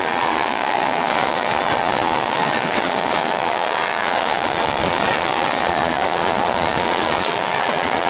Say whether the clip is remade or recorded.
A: remade